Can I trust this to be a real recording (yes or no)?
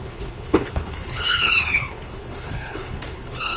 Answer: no